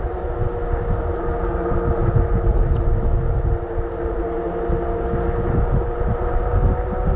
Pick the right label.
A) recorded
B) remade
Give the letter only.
A